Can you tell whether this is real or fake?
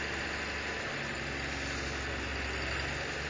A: real